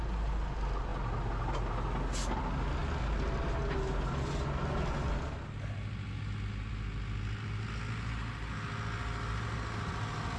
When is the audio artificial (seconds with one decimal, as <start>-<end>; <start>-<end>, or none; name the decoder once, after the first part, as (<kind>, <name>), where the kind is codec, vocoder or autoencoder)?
none